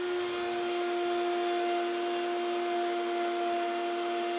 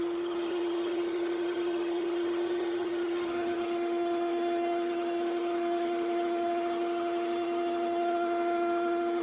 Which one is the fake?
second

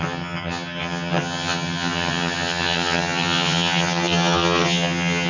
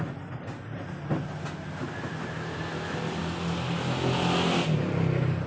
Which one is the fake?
first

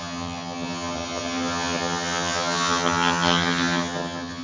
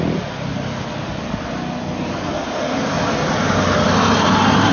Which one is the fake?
first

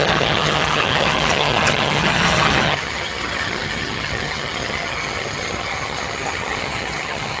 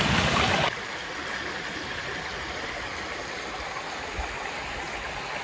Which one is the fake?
first